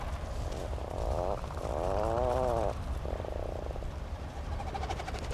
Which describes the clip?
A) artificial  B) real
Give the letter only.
A